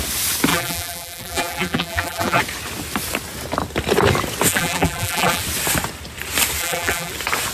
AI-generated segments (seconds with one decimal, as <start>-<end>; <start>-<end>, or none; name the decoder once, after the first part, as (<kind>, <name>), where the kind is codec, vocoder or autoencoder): 0.5-2.4 (vocoder, BigVGAN v2); 4.5-5.4; 6.6-7.1